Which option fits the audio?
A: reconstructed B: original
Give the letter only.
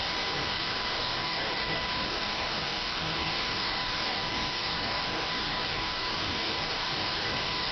A